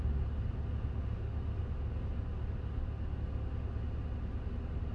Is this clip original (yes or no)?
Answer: yes